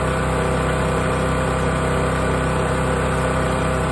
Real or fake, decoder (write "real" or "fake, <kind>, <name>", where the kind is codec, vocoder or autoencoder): real